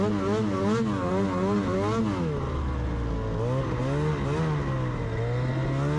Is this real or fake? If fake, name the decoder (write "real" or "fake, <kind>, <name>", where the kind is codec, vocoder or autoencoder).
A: real